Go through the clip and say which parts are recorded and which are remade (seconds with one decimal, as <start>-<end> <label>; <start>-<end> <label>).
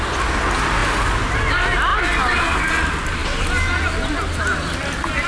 0.0-5.3 recorded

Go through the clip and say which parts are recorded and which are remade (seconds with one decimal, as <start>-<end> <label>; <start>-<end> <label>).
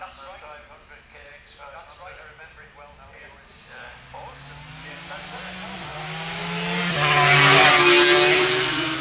0.0-9.0 recorded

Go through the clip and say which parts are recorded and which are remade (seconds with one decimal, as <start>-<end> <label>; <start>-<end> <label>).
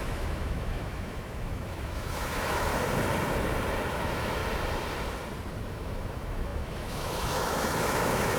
0.0-2.7 remade; 2.7-3.9 recorded; 3.9-4.4 remade; 4.4-5.7 recorded; 5.7-8.4 remade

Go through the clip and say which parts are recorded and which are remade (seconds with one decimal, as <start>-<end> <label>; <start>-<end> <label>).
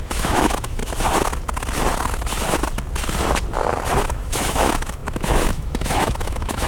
0.0-0.8 remade; 0.8-4.0 recorded; 4.0-6.7 remade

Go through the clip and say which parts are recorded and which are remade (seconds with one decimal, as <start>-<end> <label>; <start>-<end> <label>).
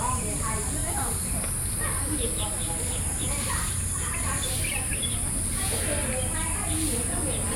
0.0-7.6 recorded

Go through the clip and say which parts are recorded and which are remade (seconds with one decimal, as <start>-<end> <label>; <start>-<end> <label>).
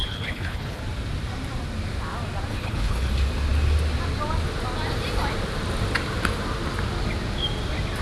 0.0-0.8 remade; 0.8-2.5 recorded; 2.5-3.1 remade; 3.1-8.0 recorded